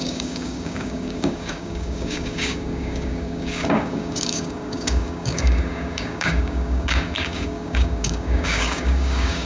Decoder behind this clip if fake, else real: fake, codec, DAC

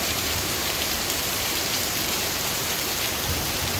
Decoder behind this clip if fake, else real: fake, vocoder, BigVGAN v2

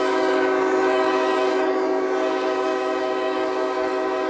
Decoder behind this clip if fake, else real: fake, codec, DAC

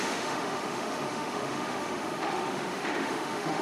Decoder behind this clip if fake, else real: fake, autoencoder, DAC-VAE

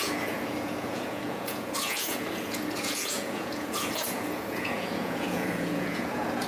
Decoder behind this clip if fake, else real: fake, vocoder, Vocos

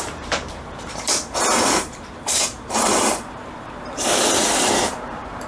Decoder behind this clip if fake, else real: fake, vocoder, BigVGAN v2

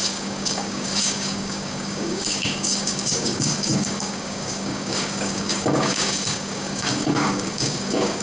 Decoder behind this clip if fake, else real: fake, codec, DAC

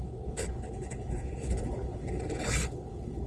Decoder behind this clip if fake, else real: fake, codec, HILCodec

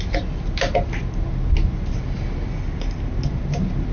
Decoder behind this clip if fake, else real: real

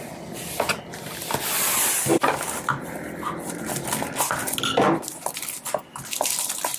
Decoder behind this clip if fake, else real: real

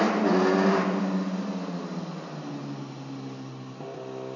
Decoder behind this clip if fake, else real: real